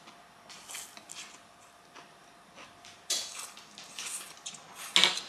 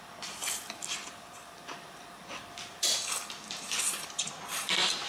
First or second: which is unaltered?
first